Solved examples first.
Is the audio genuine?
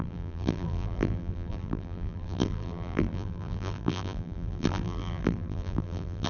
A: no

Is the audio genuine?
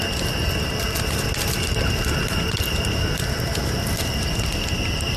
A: yes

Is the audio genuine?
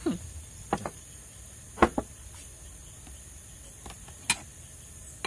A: yes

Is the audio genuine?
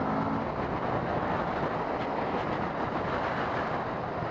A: yes